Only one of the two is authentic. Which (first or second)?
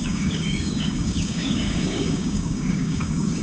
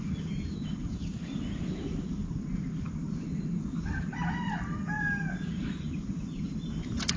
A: second